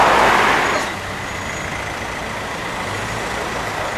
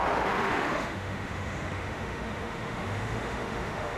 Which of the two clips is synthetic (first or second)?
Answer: second